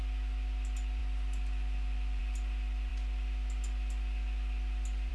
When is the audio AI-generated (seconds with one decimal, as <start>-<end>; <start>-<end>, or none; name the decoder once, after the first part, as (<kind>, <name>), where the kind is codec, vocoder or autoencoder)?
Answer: none